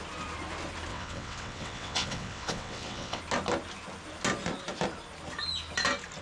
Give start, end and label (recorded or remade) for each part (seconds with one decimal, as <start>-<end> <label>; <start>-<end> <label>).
0.0-0.9 recorded; 0.9-3.2 remade; 3.2-6.2 recorded